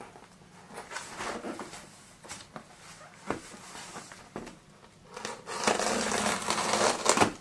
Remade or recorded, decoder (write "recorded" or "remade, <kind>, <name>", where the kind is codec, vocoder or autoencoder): recorded